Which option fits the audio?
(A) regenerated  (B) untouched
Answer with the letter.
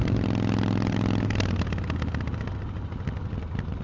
B